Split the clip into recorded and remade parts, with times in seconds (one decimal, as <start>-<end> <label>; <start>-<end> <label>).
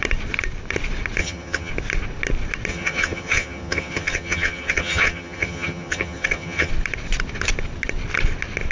0.0-1.2 recorded; 1.2-1.7 remade; 1.7-2.7 recorded; 2.7-6.7 remade; 6.7-8.7 recorded